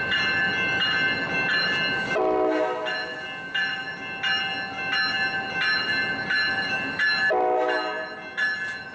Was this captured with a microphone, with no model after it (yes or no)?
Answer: yes